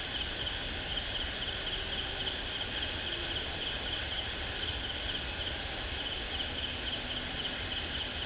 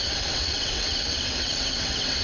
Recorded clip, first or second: first